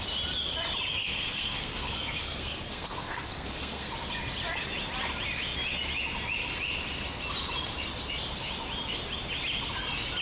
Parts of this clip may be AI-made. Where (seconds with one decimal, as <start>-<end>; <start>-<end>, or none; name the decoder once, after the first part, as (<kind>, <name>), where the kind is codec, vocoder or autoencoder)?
1.0-3.9 (codec, SNAC)